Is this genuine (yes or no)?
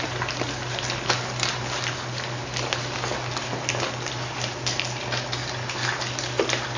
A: yes